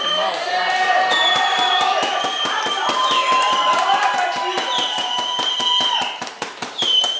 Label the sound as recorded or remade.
remade